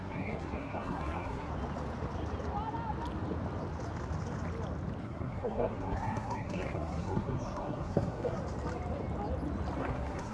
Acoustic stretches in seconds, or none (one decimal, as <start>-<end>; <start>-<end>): 1.5-5.0; 8.4-9.8